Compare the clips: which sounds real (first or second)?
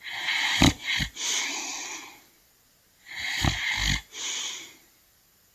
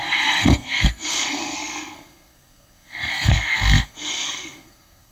first